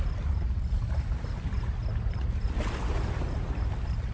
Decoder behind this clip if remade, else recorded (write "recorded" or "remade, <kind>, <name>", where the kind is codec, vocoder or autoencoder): recorded